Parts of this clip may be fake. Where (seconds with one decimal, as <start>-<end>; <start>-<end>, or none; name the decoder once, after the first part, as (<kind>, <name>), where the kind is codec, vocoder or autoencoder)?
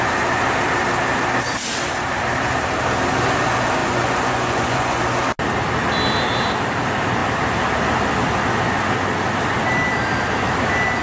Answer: 3.8-5.0 (vocoder, Vocos)